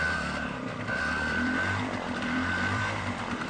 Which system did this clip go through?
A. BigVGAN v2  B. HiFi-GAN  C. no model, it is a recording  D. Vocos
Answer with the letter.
A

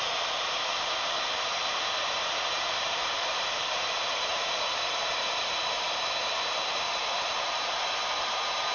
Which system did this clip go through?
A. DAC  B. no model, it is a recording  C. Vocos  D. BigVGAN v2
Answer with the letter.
D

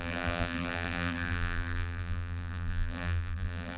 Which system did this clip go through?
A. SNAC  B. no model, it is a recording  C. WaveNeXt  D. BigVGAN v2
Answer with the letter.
D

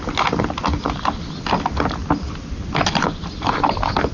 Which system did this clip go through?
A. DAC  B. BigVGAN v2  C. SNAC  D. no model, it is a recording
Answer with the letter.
D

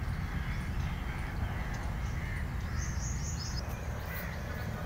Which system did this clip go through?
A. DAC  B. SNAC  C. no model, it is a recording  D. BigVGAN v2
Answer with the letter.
C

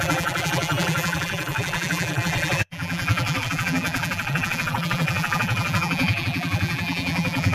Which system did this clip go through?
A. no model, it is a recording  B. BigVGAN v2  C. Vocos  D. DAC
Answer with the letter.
B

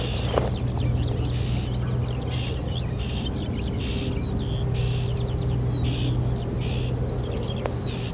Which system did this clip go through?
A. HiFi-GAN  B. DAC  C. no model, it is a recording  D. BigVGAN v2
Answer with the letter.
C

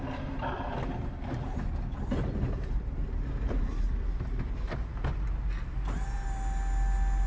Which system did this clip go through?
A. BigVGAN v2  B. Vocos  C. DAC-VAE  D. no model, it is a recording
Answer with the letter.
D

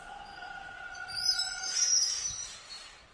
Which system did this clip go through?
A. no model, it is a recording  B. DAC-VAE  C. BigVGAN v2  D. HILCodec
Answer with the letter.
C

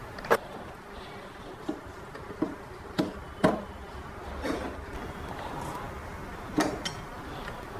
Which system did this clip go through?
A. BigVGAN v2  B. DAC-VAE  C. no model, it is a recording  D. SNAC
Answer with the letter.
C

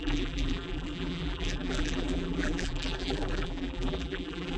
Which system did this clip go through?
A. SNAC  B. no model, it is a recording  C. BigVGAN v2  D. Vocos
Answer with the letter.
C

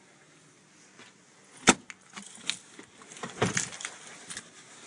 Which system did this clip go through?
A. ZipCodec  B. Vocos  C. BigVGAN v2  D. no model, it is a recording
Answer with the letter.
D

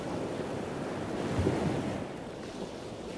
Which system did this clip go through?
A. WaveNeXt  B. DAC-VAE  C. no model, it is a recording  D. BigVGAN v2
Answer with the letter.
C